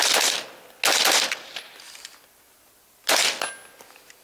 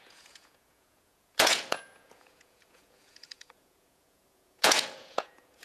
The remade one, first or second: second